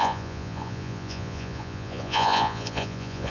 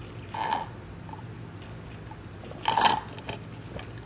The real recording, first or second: second